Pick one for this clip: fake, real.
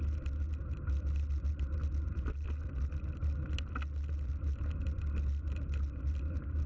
real